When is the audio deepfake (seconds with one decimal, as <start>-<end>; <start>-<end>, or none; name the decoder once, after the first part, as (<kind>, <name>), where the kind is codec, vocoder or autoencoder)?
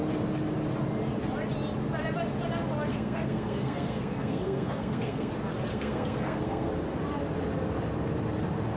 2.9-5.3 (codec, SNAC); 5.7-6.7